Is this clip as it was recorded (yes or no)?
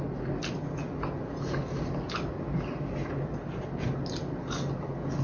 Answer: yes